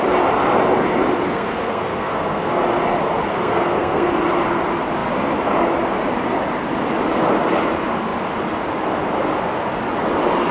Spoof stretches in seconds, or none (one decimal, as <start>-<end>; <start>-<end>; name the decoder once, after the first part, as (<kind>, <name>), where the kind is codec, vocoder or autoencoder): 1.3-2.6 (codec, SNAC); 3.3-4.1